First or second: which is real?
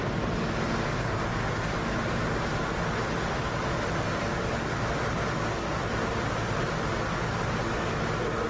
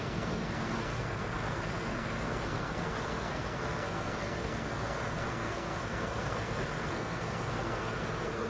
first